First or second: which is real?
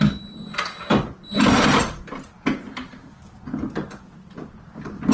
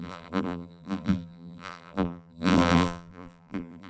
first